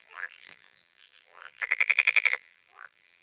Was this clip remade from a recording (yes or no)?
yes